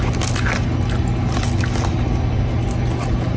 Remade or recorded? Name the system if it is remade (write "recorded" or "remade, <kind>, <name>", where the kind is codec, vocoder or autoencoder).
recorded